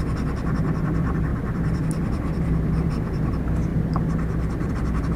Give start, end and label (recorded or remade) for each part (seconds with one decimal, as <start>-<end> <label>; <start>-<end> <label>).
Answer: 0.0-3.7 remade; 3.7-4.7 recorded; 4.7-5.2 remade

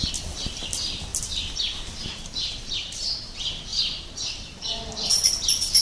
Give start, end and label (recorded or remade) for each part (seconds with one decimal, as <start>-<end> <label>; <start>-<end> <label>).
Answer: 0.0-1.1 recorded; 1.1-3.1 remade; 3.1-3.7 recorded; 3.7-4.8 remade; 4.8-5.8 recorded

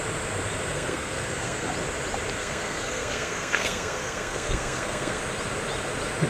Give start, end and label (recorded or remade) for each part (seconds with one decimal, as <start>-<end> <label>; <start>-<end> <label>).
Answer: 0.0-0.7 recorded; 0.7-1.7 remade; 1.7-2.4 recorded; 2.4-5.2 remade; 5.2-6.3 recorded